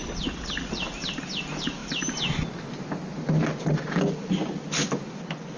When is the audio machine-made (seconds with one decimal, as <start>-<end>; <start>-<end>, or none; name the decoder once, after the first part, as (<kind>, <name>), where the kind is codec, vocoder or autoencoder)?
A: none